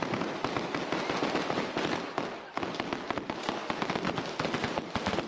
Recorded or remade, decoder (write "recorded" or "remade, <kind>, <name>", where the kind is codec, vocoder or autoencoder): recorded